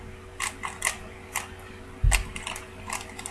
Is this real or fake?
real